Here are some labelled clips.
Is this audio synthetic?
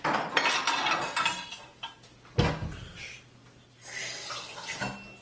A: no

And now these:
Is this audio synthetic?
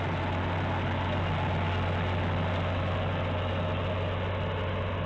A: no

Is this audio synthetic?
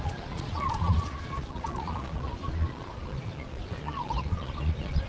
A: yes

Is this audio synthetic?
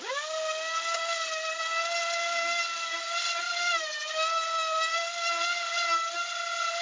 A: no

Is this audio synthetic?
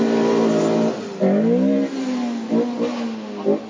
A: no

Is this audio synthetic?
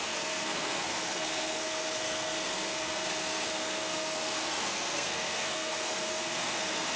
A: yes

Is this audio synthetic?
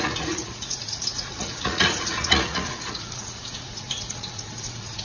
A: yes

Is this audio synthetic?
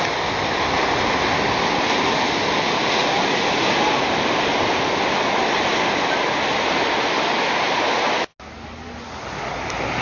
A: no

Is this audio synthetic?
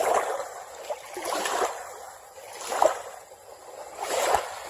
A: no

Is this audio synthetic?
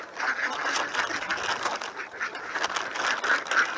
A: no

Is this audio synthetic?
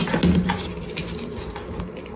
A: no